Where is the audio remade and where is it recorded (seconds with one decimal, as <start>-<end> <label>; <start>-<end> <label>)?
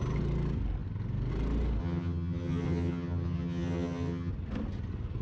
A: 0.0-1.8 recorded; 1.8-4.3 remade; 4.3-5.2 recorded